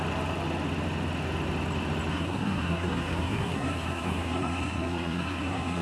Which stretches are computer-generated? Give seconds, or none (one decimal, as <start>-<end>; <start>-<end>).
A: 2.1-5.8

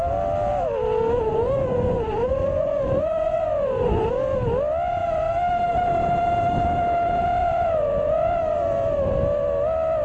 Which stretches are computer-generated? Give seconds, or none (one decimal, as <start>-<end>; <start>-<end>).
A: 1.3-4.1; 7.4-8.3